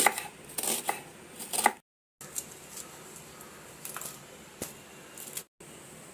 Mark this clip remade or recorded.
recorded